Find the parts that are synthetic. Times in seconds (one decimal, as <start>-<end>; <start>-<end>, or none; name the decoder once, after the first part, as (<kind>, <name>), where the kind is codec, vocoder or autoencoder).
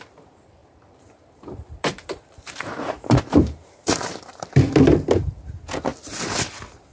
0.6-4.5 (vocoder, BigVGAN v2)